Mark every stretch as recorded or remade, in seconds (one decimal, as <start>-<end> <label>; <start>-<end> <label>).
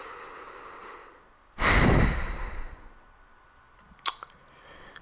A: 0.0-5.0 recorded